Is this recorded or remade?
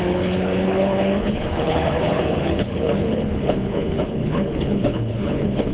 remade